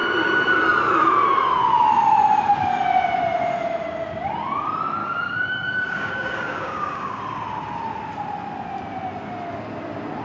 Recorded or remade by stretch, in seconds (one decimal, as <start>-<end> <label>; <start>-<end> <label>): 0.0-5.0 recorded; 5.0-7.2 remade; 7.2-10.2 recorded